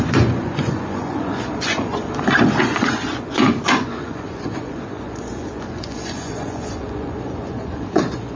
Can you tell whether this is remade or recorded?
remade